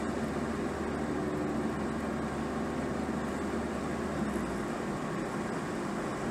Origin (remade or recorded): recorded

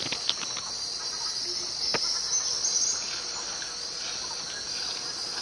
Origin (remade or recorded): recorded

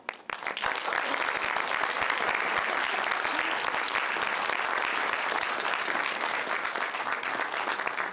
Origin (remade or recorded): recorded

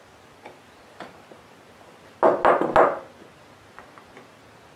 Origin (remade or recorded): recorded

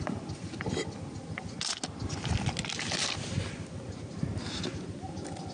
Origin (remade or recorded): recorded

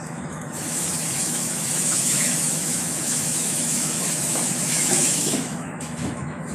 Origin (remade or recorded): remade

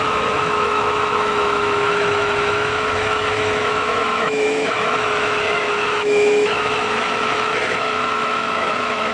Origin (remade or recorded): remade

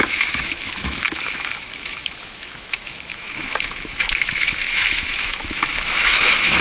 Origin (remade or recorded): remade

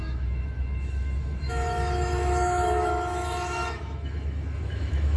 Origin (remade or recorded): remade